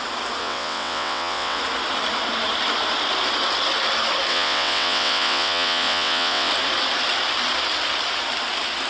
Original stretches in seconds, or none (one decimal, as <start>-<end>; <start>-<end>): 0.0-0.4; 1.6-4.3; 6.5-8.9